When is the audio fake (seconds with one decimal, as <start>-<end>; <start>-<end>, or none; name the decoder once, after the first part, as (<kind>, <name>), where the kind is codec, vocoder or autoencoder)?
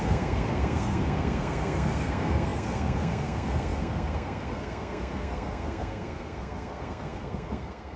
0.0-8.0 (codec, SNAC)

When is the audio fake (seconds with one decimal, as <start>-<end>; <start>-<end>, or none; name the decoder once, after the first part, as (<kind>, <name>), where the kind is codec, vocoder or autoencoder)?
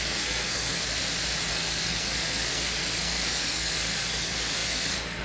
0.0-1.0 (codec, SNAC); 1.5-5.2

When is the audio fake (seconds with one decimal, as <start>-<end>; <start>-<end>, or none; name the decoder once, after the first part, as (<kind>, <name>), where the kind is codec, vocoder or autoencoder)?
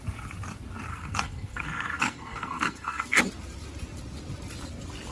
0.9-3.2 (codec, SNAC)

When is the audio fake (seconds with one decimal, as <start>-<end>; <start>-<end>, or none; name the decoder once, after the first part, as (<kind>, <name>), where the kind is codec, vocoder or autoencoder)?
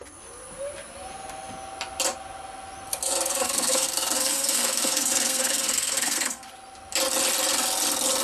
2.9-6.5 (codec, SNAC)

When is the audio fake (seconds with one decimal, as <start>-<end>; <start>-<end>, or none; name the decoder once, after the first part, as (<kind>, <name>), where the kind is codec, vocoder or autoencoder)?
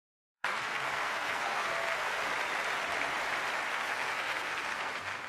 0.0-2.2 (codec, SNAC); 3.7-5.3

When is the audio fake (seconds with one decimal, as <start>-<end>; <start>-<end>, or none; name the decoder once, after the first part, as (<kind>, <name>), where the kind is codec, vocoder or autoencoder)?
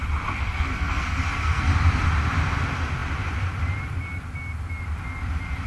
0.4-1.7 (codec, SNAC)